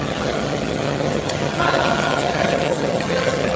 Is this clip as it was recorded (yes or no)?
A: no